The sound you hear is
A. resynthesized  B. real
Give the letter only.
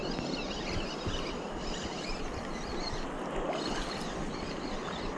B